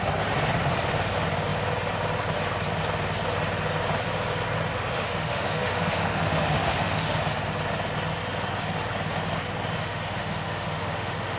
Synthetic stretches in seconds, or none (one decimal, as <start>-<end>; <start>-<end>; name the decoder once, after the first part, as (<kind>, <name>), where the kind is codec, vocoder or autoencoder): 4.7-7.2 (autoencoder, DAC-VAE); 9.8-11.4